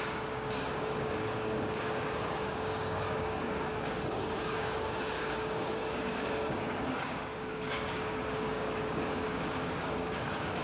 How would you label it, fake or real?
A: fake